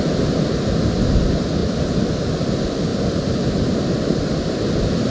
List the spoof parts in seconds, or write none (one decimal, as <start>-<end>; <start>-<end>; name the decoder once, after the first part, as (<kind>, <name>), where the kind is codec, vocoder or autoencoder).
none